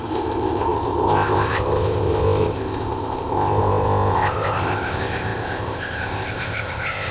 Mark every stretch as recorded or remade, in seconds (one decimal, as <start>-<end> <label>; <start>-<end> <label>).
0.0-7.1 remade